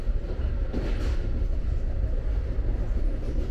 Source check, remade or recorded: recorded